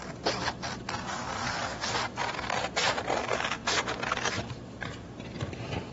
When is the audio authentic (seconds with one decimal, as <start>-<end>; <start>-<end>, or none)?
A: 0.0-1.7; 2.2-5.9